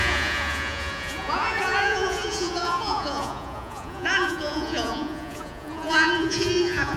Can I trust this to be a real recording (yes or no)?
no